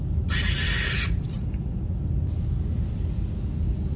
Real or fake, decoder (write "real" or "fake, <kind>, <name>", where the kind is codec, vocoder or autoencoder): real